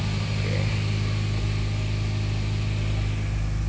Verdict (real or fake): real